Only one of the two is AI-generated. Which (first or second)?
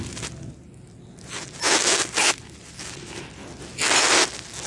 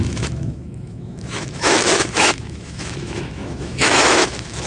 second